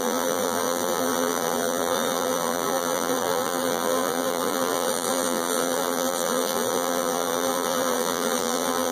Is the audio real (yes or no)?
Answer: no